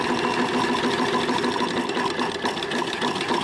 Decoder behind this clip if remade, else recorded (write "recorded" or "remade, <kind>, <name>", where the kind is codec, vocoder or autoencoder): recorded